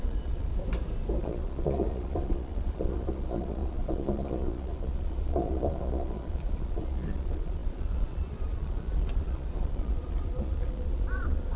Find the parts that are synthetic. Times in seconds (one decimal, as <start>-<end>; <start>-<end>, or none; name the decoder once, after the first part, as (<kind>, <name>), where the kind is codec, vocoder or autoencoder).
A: 0.0-0.5 (vocoder, Vocos); 1.2-11.6